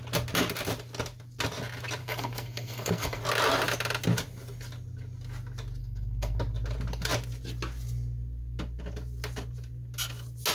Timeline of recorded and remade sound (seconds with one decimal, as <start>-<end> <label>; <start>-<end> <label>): 0.0-2.0 recorded; 2.0-3.2 remade; 3.2-5.8 recorded; 5.8-6.4 remade; 6.4-10.5 recorded